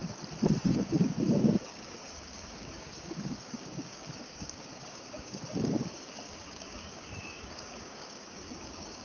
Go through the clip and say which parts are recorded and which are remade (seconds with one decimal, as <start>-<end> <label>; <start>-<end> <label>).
0.0-0.6 recorded; 0.6-9.0 remade